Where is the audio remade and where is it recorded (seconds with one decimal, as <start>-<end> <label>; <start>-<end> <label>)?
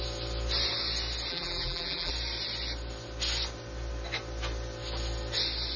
0.0-1.3 recorded; 1.3-2.1 remade; 2.1-5.8 recorded